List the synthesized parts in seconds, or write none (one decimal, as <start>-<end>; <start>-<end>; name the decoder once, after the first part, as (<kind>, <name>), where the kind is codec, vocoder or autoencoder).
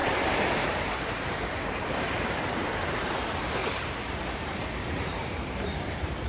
0.0-1.8 (vocoder, BigVGAN v2); 2.6-3.1; 3.6-6.3